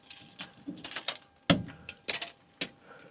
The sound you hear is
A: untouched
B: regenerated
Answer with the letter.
A